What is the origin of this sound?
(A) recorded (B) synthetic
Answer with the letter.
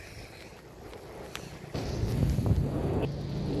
A